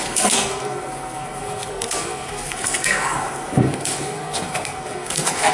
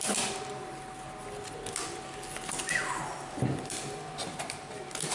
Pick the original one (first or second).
second